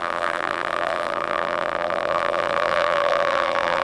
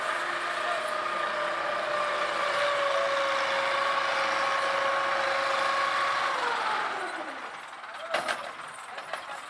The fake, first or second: first